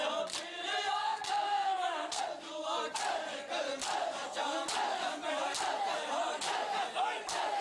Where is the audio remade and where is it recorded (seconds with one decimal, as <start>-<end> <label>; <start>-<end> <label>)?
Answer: 0.0-1.0 recorded; 1.0-2.2 remade; 2.2-7.6 recorded